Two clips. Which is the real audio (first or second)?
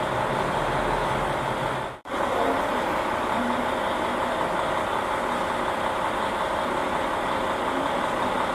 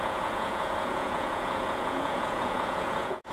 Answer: first